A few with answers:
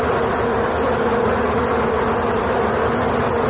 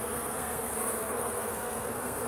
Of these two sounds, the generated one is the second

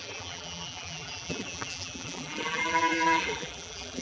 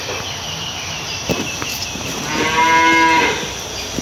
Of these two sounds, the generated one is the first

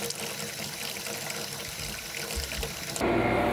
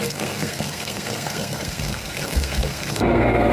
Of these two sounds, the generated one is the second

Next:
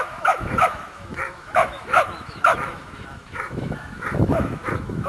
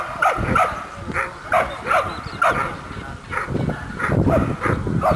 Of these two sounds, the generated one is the first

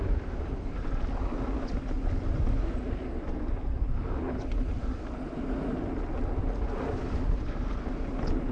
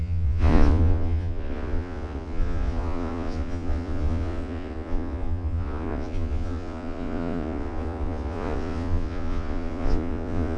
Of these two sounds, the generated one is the second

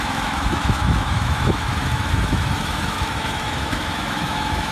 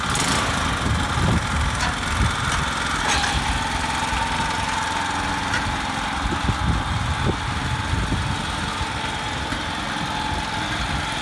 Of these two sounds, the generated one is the first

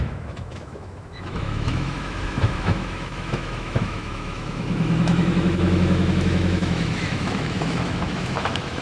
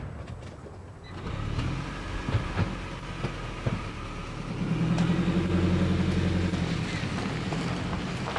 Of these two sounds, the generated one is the first